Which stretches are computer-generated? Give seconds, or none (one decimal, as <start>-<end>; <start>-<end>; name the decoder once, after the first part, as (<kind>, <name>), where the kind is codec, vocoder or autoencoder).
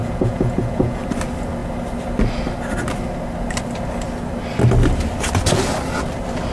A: 0.0-1.0 (vocoder, Vocos)